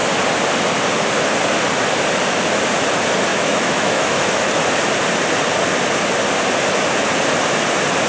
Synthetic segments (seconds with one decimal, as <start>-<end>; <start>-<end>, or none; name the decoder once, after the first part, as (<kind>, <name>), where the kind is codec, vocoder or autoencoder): 3.3-4.5 (autoencoder, DAC-VAE)